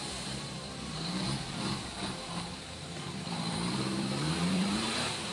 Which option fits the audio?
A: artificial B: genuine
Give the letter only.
A